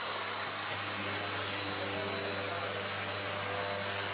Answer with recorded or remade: recorded